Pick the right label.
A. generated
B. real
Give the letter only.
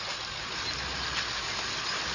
B